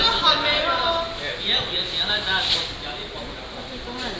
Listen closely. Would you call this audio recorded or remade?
recorded